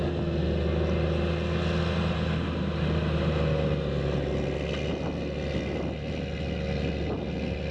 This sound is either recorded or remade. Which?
recorded